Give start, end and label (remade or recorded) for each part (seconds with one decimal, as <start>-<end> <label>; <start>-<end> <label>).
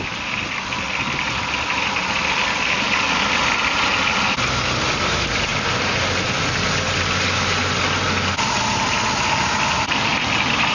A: 0.0-10.7 recorded